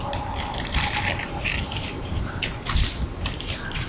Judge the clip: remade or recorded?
remade